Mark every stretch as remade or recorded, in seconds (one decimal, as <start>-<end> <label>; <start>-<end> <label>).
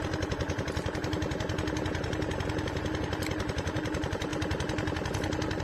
0.0-5.6 recorded